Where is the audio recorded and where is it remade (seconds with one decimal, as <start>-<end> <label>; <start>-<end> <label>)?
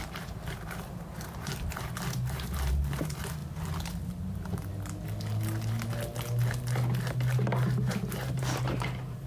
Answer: 0.0-3.4 remade; 3.4-4.0 recorded; 4.0-4.7 remade; 4.7-7.9 recorded; 7.9-9.3 remade